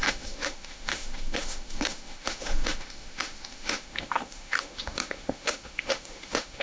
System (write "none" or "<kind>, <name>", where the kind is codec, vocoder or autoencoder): autoencoder, DAC-VAE